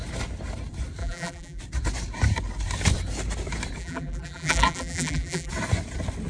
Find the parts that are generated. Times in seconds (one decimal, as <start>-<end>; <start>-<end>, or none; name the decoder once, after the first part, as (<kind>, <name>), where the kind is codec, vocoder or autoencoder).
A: 1.0-1.6 (vocoder, BigVGAN v2); 3.8-5.5